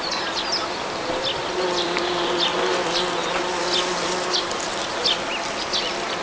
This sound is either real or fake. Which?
real